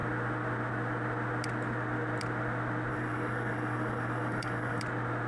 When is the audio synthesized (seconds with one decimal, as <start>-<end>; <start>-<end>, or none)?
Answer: 2.9-4.8